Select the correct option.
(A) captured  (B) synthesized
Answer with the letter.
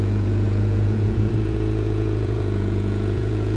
B